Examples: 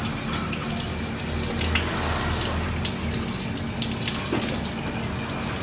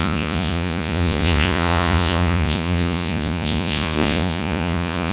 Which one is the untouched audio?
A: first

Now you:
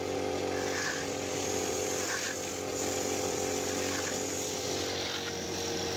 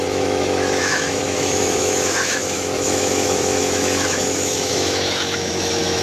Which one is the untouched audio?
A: first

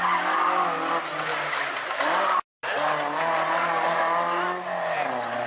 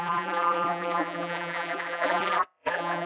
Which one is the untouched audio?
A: first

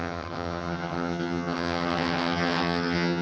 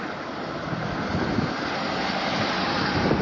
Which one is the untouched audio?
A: second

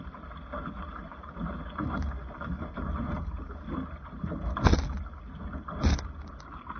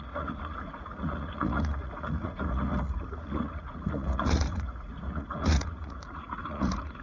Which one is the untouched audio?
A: first